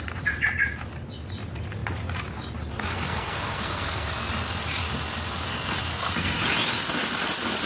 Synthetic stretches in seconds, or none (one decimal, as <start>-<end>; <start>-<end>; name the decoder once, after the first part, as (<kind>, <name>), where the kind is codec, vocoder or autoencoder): 2.9-4.1 (codec, SNAC); 5.9-6.4